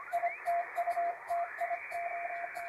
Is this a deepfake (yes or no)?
no